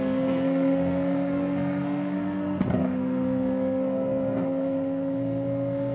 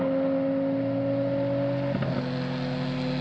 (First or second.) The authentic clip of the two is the second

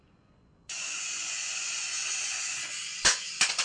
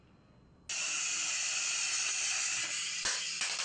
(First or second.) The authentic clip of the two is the second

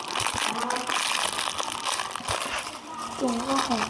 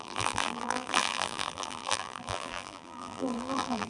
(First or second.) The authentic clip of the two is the first